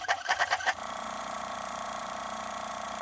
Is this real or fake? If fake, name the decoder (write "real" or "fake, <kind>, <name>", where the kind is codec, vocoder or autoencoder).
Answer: fake, vocoder, Vocos